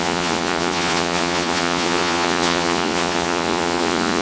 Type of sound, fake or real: fake